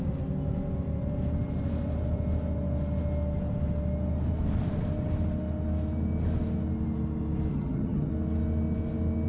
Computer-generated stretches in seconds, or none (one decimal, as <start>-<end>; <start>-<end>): 7.5-8.1